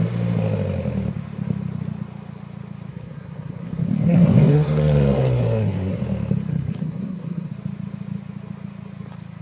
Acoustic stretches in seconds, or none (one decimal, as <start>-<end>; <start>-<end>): 0.0-2.9; 6.0-6.5; 7.5-9.4